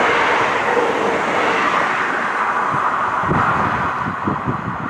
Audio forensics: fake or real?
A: real